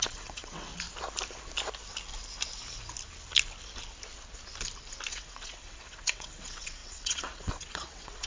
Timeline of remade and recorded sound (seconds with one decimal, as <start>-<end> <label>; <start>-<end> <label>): 0.0-0.7 remade; 0.7-5.1 recorded; 5.1-8.3 remade